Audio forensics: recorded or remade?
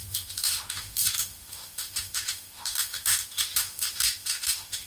remade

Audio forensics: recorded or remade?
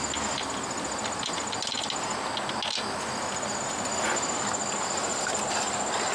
recorded